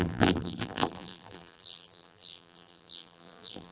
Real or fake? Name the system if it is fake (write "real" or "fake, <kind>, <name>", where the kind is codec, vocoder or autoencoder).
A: fake, vocoder, BigVGAN v2